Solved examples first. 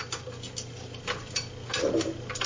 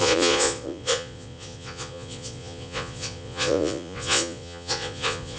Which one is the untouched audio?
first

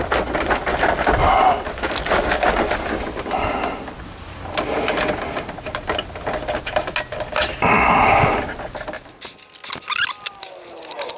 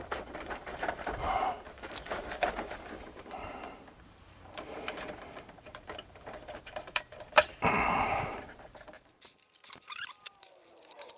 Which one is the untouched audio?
first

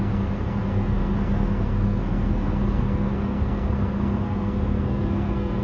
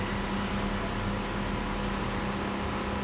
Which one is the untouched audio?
second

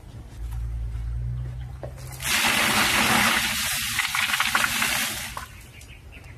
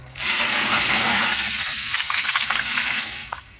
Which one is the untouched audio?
first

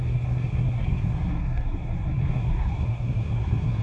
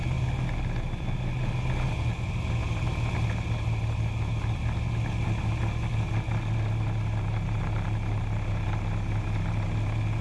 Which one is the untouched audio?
second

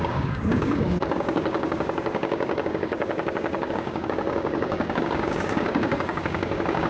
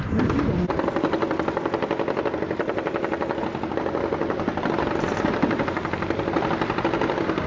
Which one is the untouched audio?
second